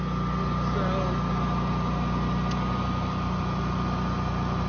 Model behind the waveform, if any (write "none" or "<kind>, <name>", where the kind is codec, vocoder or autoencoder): none